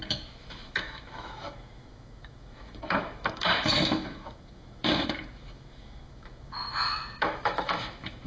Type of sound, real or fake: fake